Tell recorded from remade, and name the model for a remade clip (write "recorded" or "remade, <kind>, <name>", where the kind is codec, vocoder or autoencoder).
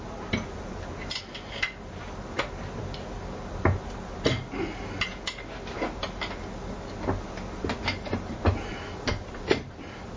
recorded